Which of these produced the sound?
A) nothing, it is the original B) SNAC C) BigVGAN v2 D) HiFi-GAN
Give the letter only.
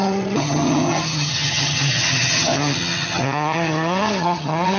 D